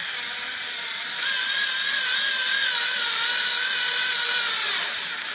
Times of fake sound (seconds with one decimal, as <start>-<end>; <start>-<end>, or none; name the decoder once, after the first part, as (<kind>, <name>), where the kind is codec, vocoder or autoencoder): none